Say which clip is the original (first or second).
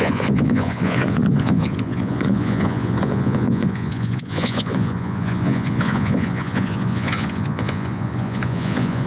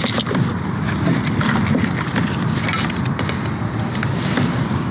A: second